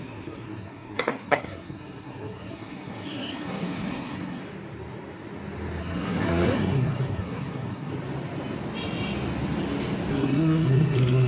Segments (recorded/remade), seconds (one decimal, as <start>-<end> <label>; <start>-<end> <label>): 0.0-4.4 remade; 4.4-5.8 recorded; 5.8-7.9 remade; 7.9-10.1 recorded; 10.1-11.3 remade